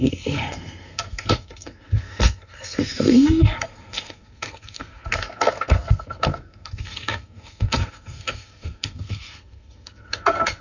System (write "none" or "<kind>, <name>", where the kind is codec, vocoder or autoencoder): codec, SNAC